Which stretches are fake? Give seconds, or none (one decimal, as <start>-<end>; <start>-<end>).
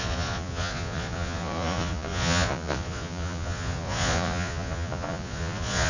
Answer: 0.0-5.9